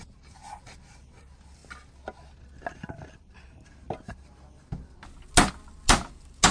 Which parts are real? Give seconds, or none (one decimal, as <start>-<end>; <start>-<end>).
0.0-6.5